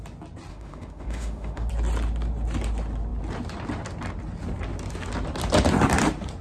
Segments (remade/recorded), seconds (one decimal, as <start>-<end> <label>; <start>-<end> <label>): 0.0-0.5 recorded; 0.5-1.7 remade; 1.7-6.4 recorded